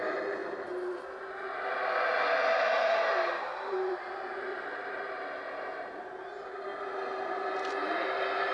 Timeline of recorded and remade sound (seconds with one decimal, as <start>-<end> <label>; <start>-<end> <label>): 0.0-4.5 recorded; 4.5-5.2 remade; 5.2-8.5 recorded